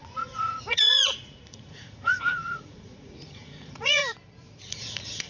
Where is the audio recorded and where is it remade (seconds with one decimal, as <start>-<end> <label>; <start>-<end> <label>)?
0.0-4.0 remade; 4.0-4.7 recorded; 4.7-5.3 remade